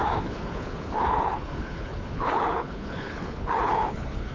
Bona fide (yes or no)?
no